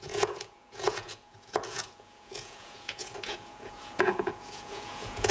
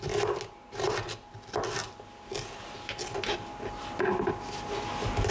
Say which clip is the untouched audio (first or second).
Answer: second